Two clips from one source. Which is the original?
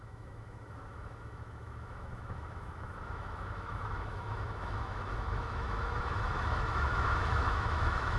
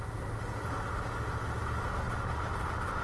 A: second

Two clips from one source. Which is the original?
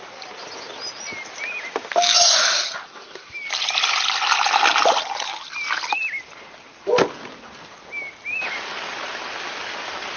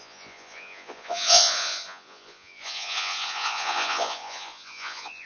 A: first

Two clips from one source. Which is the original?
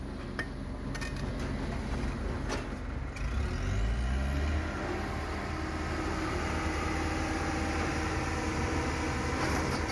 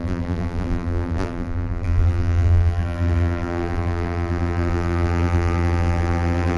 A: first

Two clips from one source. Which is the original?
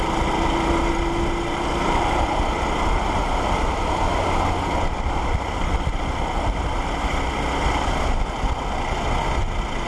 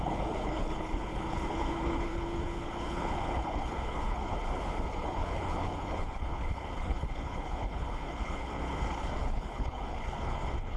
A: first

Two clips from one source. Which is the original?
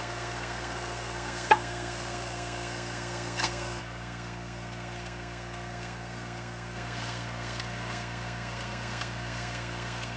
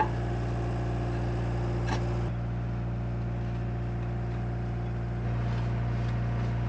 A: second